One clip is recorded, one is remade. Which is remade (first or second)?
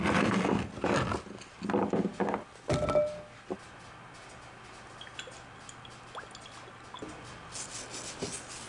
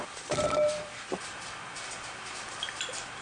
second